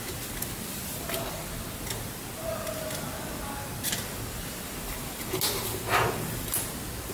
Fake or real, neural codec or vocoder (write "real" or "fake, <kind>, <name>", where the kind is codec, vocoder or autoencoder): real